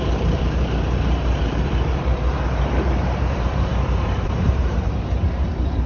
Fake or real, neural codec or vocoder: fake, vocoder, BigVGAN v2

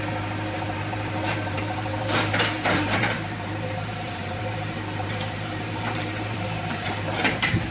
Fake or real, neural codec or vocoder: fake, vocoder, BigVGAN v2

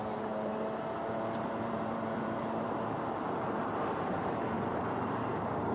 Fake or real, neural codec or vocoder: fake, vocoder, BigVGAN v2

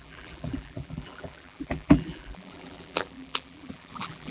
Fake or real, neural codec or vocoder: fake, vocoder, BigVGAN v2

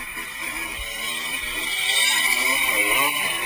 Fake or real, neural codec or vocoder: fake, vocoder, BigVGAN v2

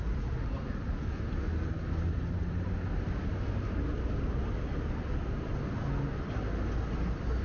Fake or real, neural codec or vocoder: real